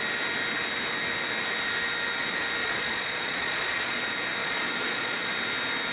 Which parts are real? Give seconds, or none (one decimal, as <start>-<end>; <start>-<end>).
0.0-2.6; 4.0-4.4; 5.3-5.9